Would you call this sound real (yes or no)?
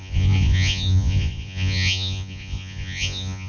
no